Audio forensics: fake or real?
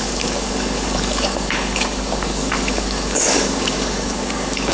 fake